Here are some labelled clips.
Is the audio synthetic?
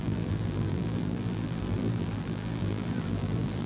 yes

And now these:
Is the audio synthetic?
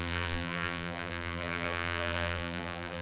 yes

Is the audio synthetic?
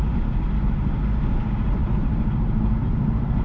yes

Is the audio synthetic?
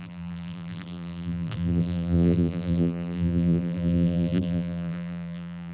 yes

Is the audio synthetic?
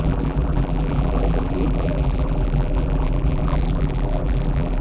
yes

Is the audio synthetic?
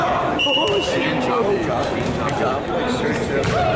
yes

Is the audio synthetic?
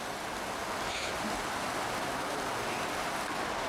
no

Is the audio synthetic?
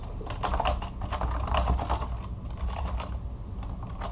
no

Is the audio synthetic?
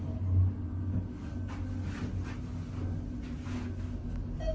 no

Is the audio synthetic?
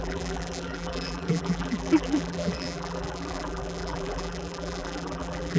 yes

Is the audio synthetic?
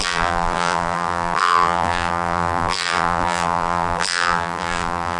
yes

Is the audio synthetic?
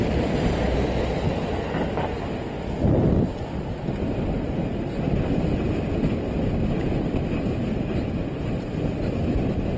no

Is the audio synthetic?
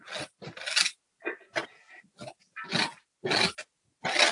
no